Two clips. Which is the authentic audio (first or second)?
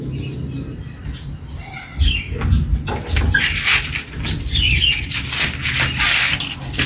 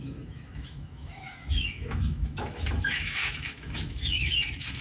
first